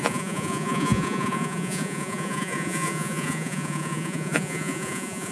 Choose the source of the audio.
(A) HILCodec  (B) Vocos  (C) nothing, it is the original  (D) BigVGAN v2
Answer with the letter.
B